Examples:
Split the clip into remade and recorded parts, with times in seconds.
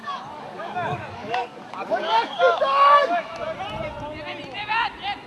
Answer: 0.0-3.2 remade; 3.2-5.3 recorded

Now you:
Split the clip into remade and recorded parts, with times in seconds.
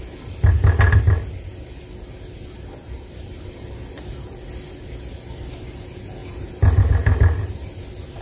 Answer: 0.0-8.2 recorded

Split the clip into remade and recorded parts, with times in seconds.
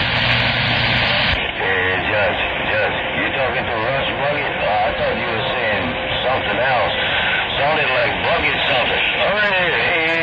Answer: 0.0-10.2 recorded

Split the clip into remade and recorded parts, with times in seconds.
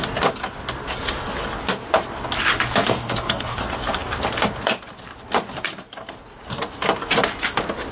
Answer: 0.0-2.8 recorded; 2.8-3.6 remade; 3.6-7.9 recorded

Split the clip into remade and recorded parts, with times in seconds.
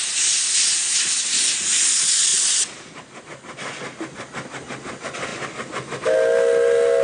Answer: 0.0-7.0 recorded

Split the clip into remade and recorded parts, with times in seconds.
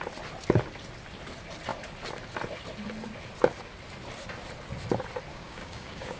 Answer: 0.0-5.3 recorded; 5.3-6.2 remade